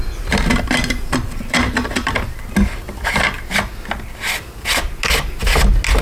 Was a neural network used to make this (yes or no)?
no